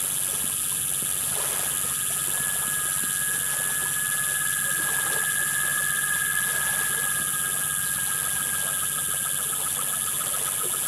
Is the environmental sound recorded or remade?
recorded